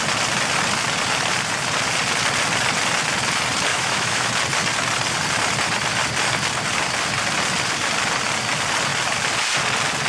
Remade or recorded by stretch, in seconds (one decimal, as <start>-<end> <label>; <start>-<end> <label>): 0.0-3.7 recorded; 3.7-4.3 remade; 4.3-10.1 recorded